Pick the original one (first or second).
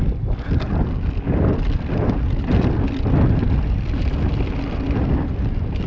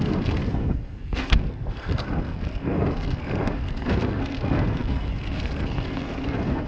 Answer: first